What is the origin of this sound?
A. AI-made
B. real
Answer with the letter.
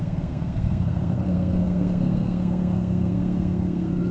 A